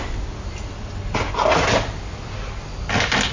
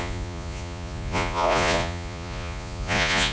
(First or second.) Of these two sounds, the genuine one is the first